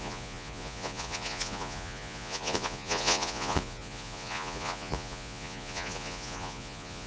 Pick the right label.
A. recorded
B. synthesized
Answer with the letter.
B